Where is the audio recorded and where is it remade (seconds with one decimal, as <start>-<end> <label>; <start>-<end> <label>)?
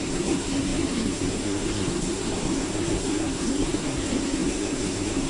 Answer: 0.0-5.3 remade